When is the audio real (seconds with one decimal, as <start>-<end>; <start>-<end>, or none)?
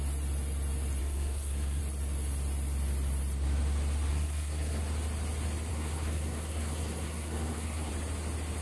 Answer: 0.0-1.0; 1.8-4.1; 4.8-5.7; 7.9-8.6